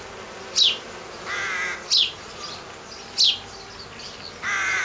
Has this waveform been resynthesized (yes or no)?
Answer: no